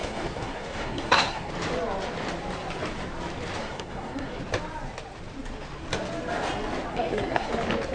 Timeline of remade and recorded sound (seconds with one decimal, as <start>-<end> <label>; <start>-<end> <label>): 0.0-1.5 remade; 1.5-3.6 recorded; 3.6-4.4 remade; 4.4-6.9 recorded; 6.9-7.5 remade; 7.5-7.9 recorded